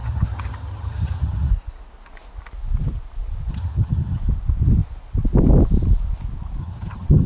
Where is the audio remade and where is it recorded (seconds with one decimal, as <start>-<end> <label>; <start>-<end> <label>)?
0.0-1.5 remade; 1.5-3.5 recorded; 3.5-4.2 remade; 4.2-6.6 recorded; 6.6-7.3 remade